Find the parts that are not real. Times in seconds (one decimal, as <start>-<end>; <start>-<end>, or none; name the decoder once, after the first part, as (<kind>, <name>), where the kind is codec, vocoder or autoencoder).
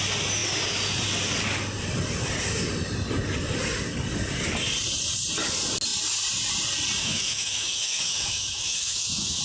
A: 7.0-9.4 (autoencoder, DAC-VAE)